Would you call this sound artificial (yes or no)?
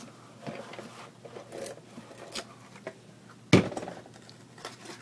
no